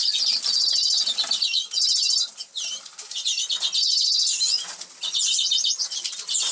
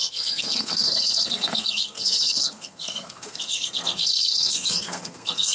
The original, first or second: first